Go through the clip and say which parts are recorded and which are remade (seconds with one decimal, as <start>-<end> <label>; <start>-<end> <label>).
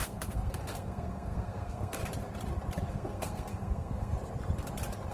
0.0-2.0 remade; 2.0-2.9 recorded; 2.9-4.1 remade; 4.1-5.1 recorded